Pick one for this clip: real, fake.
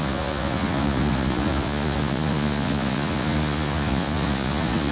fake